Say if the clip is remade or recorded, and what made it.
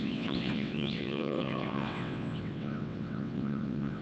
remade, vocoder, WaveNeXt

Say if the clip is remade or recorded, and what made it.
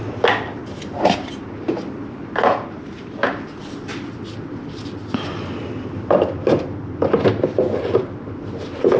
recorded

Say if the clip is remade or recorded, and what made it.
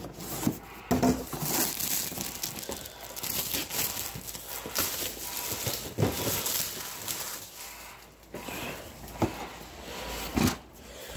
recorded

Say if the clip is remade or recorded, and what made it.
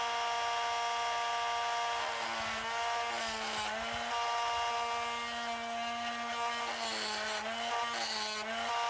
recorded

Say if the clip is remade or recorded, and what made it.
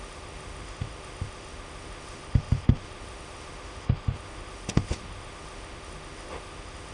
remade, autoencoder, DAC-VAE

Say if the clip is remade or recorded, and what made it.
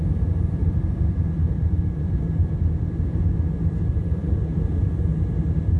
recorded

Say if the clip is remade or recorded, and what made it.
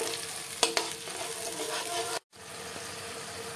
recorded